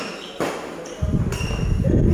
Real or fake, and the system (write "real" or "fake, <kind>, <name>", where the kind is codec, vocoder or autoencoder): real